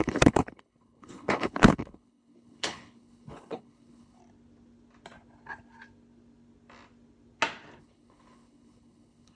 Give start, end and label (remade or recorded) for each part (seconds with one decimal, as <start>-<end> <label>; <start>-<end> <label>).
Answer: 0.0-4.2 remade; 4.2-7.8 recorded; 7.8-9.4 remade